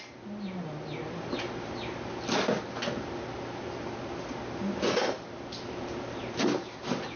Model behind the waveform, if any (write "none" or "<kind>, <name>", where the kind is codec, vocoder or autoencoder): none